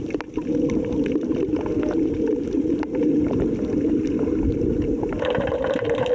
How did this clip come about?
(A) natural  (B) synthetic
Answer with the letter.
A